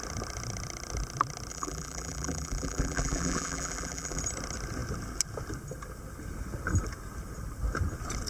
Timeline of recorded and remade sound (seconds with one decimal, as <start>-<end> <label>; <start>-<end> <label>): 0.0-1.5 recorded; 1.5-4.2 remade; 4.2-8.3 recorded